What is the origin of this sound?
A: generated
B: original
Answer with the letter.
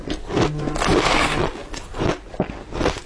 B